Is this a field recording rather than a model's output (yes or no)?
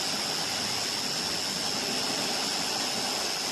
yes